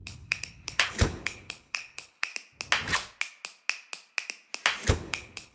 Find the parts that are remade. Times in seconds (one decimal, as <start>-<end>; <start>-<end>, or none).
0.0-2.3; 4.9-5.5